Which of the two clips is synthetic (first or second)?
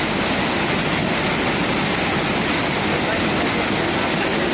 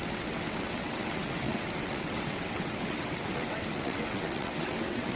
second